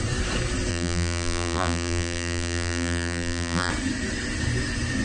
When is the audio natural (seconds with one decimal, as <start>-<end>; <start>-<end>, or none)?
0.0-0.7; 3.7-5.0